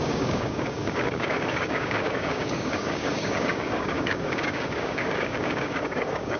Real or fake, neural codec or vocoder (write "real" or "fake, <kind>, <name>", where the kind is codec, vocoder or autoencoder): fake, codec, DAC